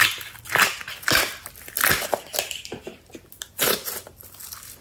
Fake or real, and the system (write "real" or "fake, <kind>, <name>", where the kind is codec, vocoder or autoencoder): real